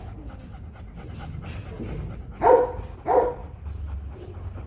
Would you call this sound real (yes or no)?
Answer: yes